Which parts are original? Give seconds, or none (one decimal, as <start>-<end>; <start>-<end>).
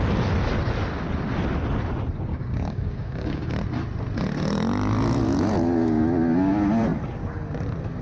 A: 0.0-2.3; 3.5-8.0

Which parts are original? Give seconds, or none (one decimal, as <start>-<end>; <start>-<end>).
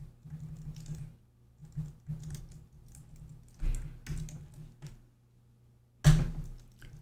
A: 0.0-7.0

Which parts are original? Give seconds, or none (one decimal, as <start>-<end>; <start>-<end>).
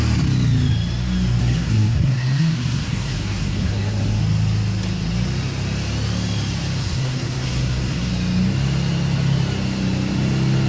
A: 0.0-1.4; 4.2-6.8; 8.1-10.7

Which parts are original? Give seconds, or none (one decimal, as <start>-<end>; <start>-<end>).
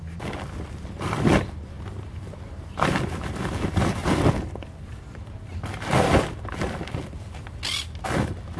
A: 0.0-8.6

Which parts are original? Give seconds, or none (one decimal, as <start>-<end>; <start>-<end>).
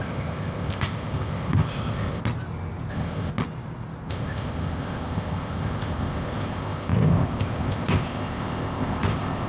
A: 2.2-2.9; 3.3-4.1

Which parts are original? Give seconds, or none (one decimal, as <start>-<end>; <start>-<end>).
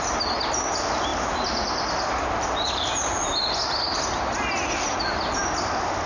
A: 0.0-6.1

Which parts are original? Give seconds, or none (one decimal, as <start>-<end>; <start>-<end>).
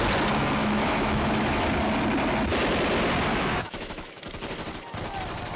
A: 0.0-0.6; 1.7-3.3; 4.2-5.6